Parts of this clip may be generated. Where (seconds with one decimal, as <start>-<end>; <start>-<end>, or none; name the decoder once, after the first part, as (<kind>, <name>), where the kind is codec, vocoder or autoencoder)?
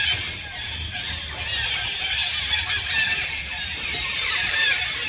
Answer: 2.2-5.1 (vocoder, BigVGAN v2)